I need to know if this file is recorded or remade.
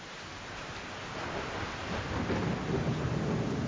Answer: recorded